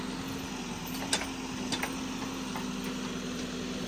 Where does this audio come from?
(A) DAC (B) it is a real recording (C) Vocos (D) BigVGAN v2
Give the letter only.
B